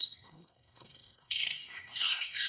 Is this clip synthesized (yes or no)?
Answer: yes